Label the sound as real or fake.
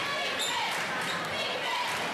real